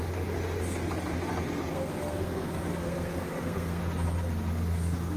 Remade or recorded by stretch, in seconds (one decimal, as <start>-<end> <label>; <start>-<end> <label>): 0.0-1.7 recorded; 1.7-3.8 remade; 3.8-5.2 recorded